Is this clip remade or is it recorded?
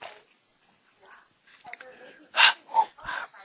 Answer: recorded